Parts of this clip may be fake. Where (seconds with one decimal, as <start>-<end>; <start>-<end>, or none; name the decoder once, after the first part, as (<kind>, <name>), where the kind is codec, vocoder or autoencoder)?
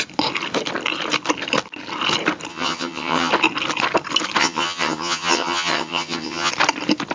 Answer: 2.5-3.3 (vocoder, HiFi-GAN); 4.4-6.5